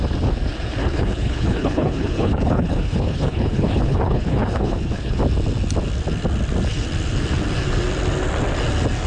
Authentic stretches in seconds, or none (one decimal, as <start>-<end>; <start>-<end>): 0.0-0.8; 5.2-9.1